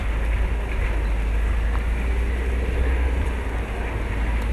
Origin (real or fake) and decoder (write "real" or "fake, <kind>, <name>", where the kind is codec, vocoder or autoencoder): real